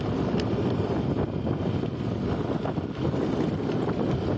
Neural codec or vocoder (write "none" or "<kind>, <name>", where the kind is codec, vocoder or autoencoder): none